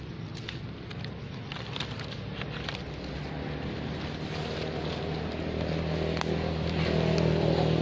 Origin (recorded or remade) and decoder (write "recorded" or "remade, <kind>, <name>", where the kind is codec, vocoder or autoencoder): recorded